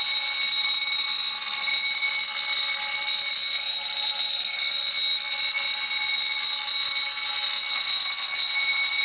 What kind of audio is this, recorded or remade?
recorded